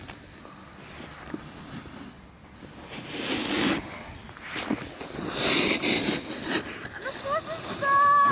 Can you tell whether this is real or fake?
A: real